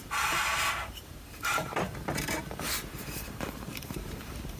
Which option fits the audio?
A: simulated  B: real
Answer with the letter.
A